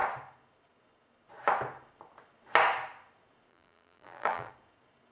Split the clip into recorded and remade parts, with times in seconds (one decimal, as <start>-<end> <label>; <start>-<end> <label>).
0.0-3.5 recorded; 3.5-4.5 remade; 4.5-5.1 recorded